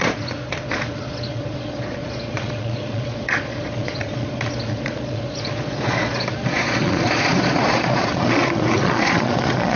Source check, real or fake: fake